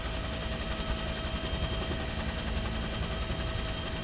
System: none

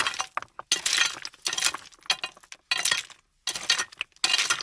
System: none